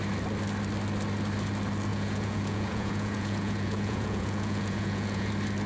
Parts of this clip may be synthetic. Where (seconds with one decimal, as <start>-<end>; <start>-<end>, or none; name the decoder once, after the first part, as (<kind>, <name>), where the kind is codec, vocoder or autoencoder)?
1.9-5.3 (vocoder, Vocos)